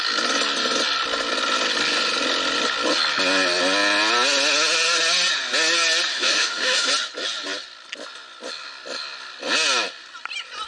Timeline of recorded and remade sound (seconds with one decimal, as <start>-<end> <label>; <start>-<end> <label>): 0.0-6.1 recorded; 6.1-6.9 remade; 6.9-10.7 recorded